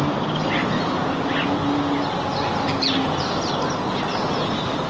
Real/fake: real